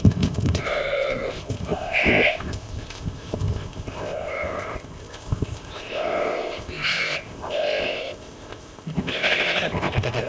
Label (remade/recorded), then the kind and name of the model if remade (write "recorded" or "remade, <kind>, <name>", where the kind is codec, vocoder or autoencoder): remade, codec, ZipCodec